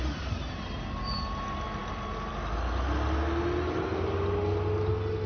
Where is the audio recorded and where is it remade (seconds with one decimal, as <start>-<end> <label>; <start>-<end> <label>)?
0.0-5.3 recorded